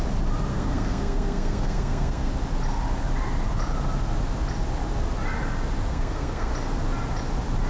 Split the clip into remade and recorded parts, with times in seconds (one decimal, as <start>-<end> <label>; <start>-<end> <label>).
0.0-0.5 recorded; 0.5-2.3 remade; 2.3-5.9 recorded; 5.9-6.5 remade; 6.5-7.7 recorded